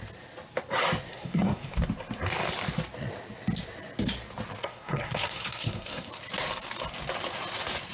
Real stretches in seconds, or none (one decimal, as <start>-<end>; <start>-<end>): 0.0-1.1; 1.7-4.6; 6.1-7.9

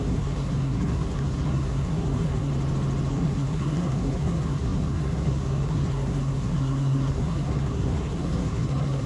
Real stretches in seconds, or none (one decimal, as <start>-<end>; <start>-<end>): 2.5-3.1